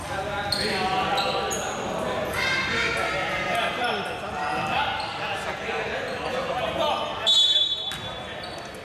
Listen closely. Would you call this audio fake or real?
real